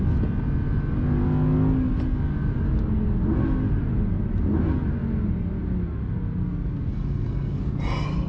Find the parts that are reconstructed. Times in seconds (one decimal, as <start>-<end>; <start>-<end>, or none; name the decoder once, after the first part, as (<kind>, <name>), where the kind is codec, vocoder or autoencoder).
6.9-7.6 (codec, SNAC)